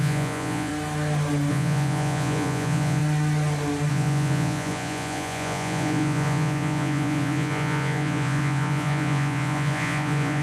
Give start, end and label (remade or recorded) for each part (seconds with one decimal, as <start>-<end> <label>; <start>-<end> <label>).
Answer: 0.0-0.7 remade; 0.7-1.5 recorded; 1.5-3.0 remade; 3.0-3.9 recorded; 3.9-10.4 remade